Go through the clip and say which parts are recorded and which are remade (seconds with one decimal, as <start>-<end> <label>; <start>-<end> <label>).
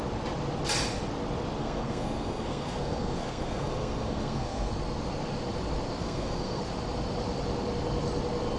0.0-1.6 recorded; 1.6-4.7 remade; 4.7-6.0 recorded; 6.0-6.6 remade; 6.6-8.6 recorded